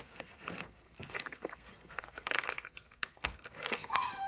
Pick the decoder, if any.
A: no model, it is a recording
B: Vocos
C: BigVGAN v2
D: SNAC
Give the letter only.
D